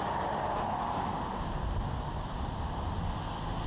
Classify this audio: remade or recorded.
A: recorded